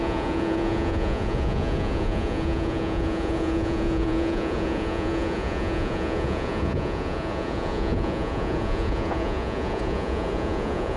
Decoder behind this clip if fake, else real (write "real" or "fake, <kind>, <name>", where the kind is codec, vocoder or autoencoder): fake, vocoder, Vocos